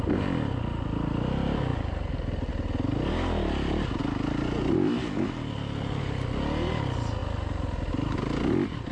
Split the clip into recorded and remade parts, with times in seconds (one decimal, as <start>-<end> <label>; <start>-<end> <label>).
0.0-8.9 recorded